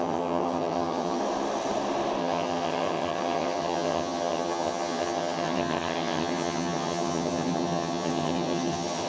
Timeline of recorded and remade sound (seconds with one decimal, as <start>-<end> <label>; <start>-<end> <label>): 0.0-1.2 remade; 1.2-2.2 recorded; 2.2-9.1 remade